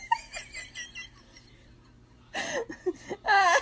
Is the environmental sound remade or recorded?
recorded